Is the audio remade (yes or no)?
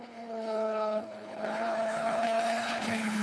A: yes